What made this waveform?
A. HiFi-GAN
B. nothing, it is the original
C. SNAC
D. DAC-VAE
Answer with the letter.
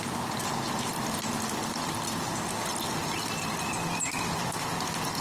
B